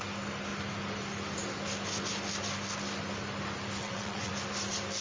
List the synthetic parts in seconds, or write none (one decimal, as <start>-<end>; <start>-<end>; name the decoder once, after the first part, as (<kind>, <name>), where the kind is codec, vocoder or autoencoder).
3.8-4.3 (vocoder, WaveNeXt)